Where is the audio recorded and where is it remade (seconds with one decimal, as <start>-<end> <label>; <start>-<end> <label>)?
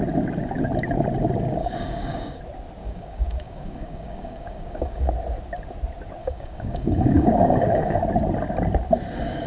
0.0-1.6 recorded; 1.6-2.4 remade; 2.4-2.8 recorded; 2.8-5.1 remade; 5.1-6.2 recorded; 6.2-8.0 remade; 8.0-9.5 recorded